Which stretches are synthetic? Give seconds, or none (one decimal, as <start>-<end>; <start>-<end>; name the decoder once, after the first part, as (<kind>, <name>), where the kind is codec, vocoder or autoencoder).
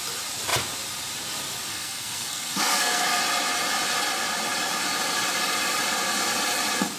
1.7-3.2 (codec, SNAC)